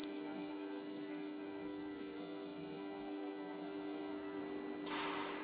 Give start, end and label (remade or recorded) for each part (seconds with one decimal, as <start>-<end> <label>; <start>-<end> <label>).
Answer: 0.0-4.4 remade; 4.4-5.4 recorded